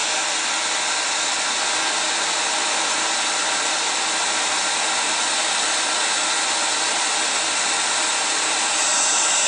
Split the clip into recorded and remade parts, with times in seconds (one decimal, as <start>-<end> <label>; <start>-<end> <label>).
0.0-9.5 recorded